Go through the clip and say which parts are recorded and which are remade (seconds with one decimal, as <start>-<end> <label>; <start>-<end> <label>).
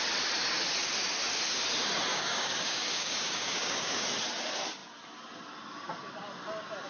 0.0-2.1 recorded; 2.1-4.1 remade; 4.1-6.9 recorded